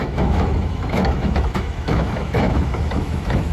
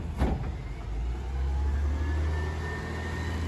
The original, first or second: second